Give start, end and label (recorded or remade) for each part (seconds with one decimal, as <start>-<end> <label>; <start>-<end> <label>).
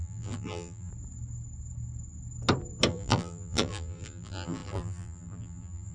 0.0-0.9 remade; 0.9-2.9 recorded; 2.9-5.9 remade